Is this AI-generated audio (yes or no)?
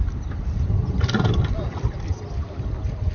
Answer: no